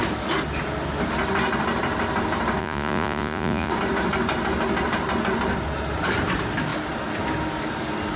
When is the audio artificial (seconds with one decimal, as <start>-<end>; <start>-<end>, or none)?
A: 2.6-3.7